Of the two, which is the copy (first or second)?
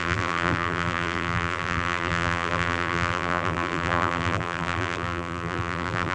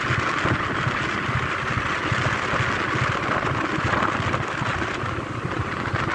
first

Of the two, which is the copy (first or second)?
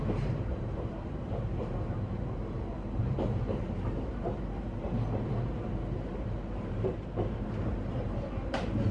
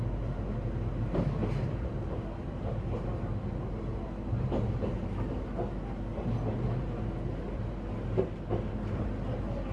first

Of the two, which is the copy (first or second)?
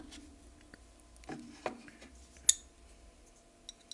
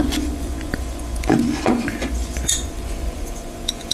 second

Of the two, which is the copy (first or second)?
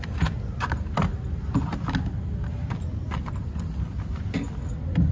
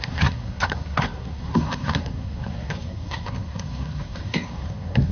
second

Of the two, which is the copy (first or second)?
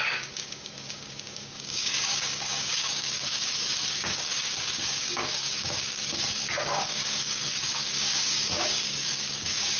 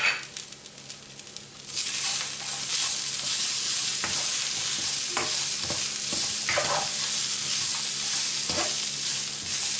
first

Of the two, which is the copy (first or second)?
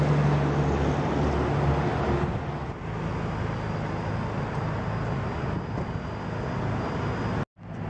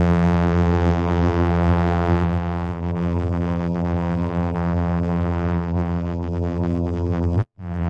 second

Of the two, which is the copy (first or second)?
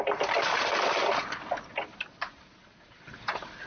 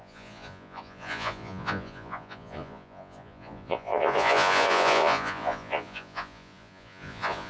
second